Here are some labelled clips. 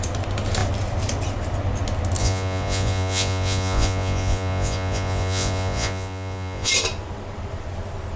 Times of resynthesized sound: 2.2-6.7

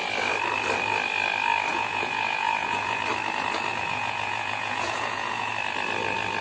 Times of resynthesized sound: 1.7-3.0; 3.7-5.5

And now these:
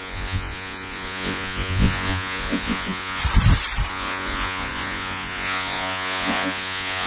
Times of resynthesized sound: 0.0-3.2; 3.9-7.1

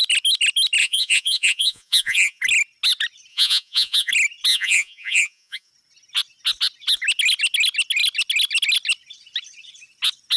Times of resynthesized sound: 0.8-2.4; 3.3-4.1; 4.5-5.7